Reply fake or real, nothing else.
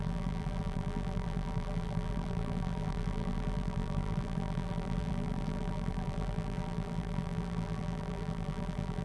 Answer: fake